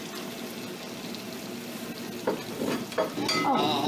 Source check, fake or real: real